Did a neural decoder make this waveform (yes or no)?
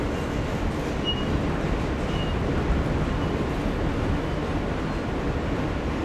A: no